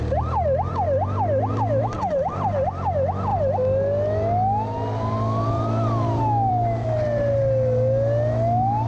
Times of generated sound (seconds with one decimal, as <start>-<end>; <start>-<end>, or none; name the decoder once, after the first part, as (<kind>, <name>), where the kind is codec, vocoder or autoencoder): none